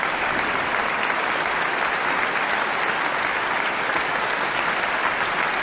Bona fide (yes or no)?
yes